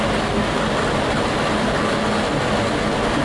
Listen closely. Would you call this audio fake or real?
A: real